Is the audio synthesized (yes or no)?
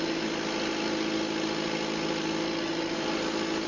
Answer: no